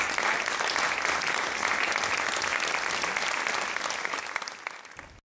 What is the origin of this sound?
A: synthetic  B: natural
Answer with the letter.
B